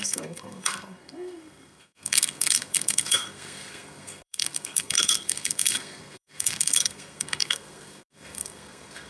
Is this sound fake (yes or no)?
yes